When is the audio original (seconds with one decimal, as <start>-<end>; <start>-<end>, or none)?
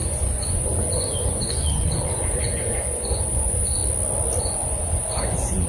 3.8-4.4